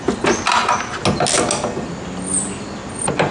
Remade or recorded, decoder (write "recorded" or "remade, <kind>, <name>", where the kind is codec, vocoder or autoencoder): recorded